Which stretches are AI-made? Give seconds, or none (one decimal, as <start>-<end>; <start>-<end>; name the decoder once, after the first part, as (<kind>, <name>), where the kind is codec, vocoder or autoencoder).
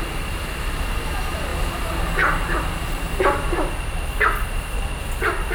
none